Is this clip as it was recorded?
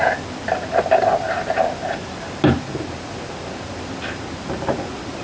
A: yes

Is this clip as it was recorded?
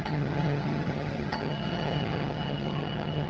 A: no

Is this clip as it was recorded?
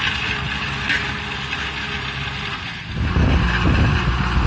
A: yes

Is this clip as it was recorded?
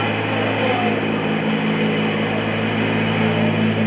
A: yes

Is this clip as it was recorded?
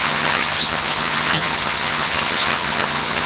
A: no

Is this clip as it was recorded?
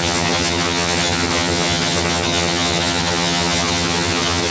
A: no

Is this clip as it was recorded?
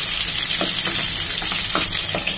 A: yes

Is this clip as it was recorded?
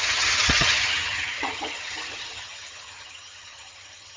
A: no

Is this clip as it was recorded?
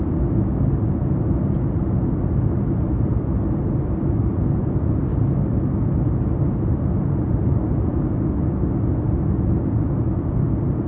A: yes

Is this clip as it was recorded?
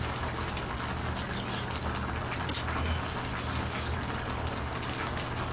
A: yes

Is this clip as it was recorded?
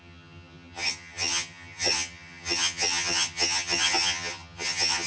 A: no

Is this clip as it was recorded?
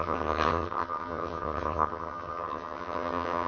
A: no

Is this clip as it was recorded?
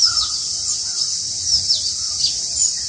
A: yes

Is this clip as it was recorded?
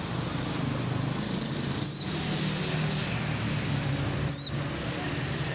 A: yes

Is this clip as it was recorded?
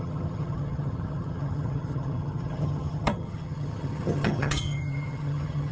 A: no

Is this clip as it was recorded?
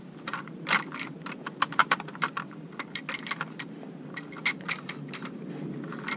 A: yes